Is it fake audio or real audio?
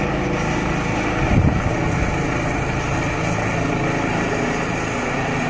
real